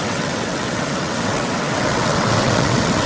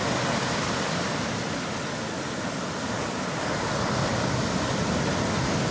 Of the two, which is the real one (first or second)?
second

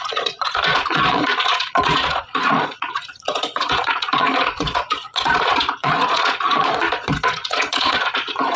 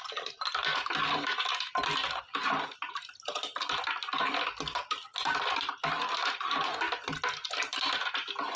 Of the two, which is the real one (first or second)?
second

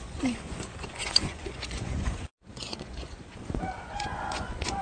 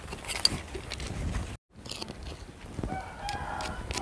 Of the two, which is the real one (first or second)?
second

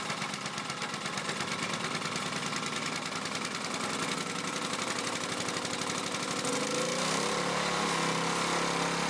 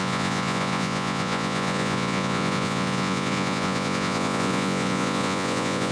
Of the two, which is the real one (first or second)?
first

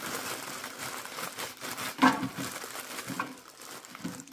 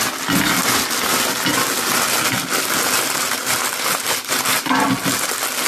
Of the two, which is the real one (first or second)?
second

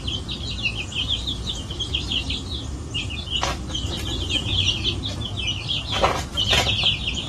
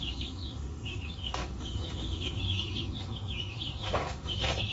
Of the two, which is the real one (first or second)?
first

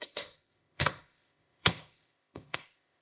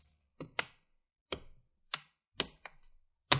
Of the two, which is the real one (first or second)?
second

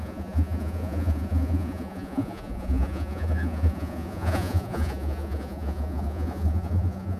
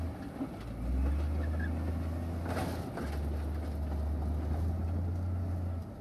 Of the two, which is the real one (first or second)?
second